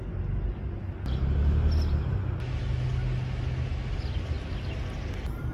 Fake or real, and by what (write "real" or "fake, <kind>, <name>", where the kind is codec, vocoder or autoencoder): real